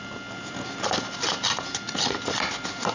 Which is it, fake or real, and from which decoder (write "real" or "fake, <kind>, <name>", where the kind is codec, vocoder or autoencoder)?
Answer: real